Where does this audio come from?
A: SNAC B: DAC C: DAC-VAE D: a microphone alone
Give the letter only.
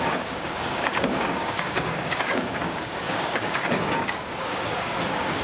B